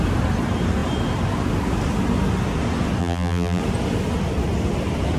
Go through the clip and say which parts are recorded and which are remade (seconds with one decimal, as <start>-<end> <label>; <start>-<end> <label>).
0.0-3.0 recorded; 3.0-3.6 remade; 3.6-5.2 recorded